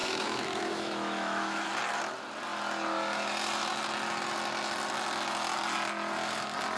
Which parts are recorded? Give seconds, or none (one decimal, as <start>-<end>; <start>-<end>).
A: 1.7-6.8